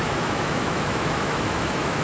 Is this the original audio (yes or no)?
no